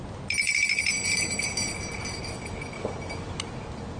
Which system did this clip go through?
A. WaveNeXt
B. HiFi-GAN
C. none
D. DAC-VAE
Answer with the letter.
C